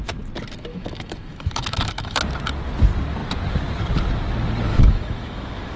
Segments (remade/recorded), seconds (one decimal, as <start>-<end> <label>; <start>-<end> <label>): 0.0-0.7 recorded; 0.7-2.2 remade; 2.2-4.7 recorded; 4.7-5.8 remade